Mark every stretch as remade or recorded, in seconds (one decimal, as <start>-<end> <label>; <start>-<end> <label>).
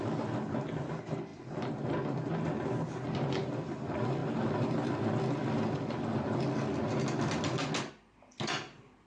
0.0-9.1 recorded